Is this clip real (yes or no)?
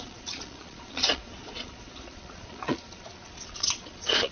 no